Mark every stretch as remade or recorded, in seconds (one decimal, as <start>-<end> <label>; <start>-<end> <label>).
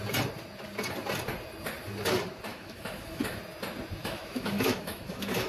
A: 0.0-2.5 recorded; 2.5-3.4 remade; 3.4-4.0 recorded; 4.0-5.5 remade